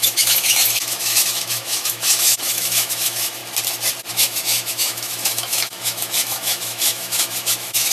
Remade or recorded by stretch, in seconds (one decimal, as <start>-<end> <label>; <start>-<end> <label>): 0.0-3.4 remade; 3.4-4.1 recorded; 4.1-7.9 remade